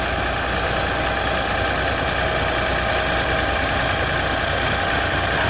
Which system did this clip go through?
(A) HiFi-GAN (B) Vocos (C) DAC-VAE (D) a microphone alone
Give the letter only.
D